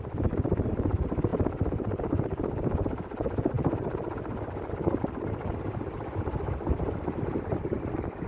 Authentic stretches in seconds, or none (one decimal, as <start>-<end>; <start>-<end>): 0.0-8.3